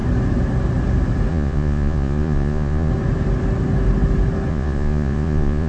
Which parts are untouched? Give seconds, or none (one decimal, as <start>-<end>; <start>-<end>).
0.0-1.3; 2.9-4.5